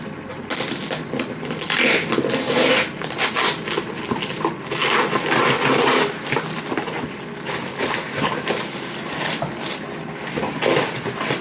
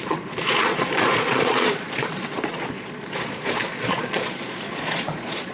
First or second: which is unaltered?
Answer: first